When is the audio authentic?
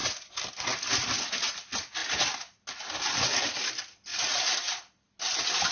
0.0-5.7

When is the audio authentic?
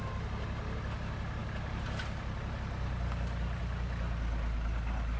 0.0-5.2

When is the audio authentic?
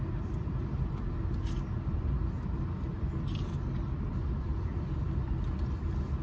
0.0-6.2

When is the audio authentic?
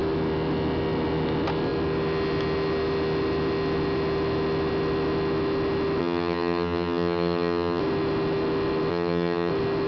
0.0-6.0; 7.8-8.9; 9.5-9.9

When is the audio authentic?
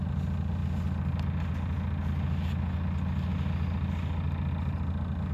0.0-5.3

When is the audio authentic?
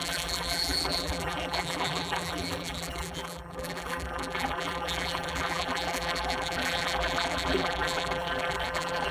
none